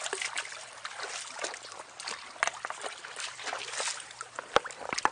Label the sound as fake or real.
real